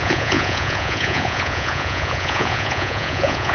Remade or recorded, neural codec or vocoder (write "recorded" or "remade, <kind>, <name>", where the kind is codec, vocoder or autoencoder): remade, vocoder, Vocos